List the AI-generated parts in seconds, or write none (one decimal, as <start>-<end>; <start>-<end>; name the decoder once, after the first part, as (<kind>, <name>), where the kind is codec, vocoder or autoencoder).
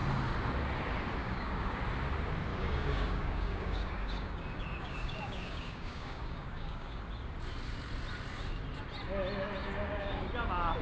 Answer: 1.2-1.8 (codec, DAC); 2.5-7.0; 9.6-10.2